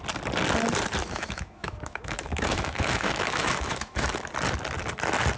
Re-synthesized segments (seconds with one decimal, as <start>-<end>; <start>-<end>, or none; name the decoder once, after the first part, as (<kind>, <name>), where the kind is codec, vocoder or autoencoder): 1.0-4.2 (autoencoder, DAC-VAE)